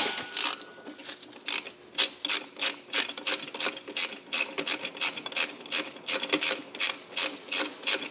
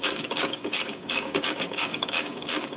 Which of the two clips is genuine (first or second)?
first